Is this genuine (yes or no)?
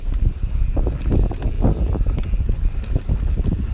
yes